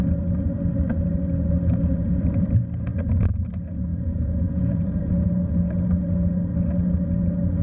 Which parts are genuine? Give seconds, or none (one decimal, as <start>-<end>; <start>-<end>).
0.0-3.9; 5.0-7.6